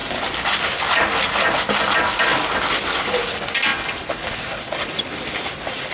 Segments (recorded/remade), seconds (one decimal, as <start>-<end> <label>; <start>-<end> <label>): 0.0-3.7 recorded; 3.7-5.9 remade